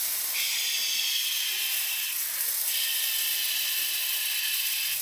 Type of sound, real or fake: real